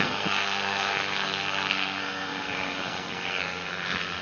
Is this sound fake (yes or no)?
yes